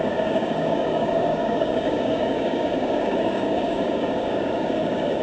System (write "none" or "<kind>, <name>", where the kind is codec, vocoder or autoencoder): codec, DAC